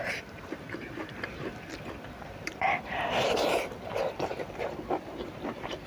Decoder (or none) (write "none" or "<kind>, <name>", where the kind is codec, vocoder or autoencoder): vocoder, BigVGAN v2